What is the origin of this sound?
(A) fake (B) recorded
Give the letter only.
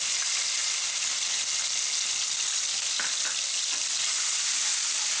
B